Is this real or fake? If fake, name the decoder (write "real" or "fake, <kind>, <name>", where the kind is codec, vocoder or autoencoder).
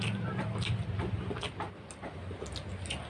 real